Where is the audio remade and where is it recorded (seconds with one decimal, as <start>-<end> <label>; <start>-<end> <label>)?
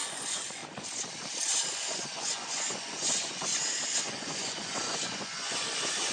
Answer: 0.0-0.6 remade; 0.6-1.7 recorded; 1.7-3.5 remade; 3.5-4.0 recorded; 4.0-6.1 remade